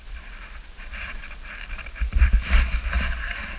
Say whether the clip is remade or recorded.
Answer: remade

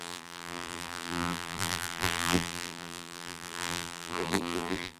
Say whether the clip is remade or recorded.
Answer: remade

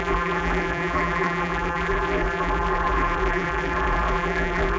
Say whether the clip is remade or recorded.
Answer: remade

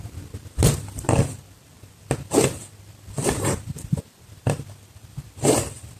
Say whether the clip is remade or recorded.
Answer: remade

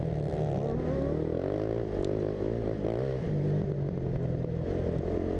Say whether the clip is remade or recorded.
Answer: recorded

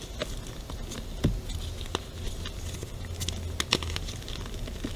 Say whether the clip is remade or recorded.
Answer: recorded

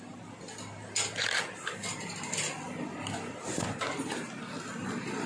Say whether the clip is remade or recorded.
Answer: recorded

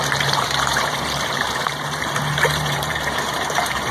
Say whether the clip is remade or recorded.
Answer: remade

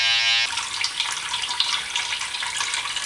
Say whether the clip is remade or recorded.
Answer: recorded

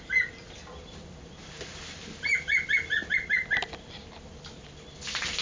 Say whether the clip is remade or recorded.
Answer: remade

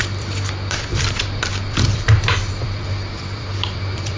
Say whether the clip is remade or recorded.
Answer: remade